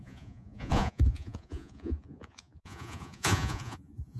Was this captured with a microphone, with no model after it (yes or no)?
no